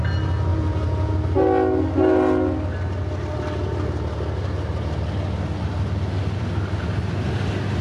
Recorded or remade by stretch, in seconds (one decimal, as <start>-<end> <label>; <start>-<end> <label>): 0.0-0.5 recorded; 0.5-1.1 remade; 1.1-7.8 recorded